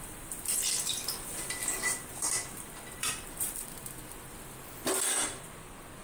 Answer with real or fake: fake